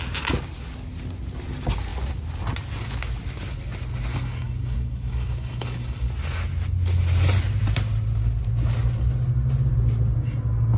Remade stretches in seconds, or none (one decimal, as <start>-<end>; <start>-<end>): 4.1-6.1